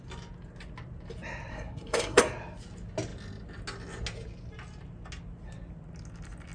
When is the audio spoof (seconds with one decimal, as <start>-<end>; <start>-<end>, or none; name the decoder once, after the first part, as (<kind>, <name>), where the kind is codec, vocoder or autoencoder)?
1.5-2.2 (codec, SNAC)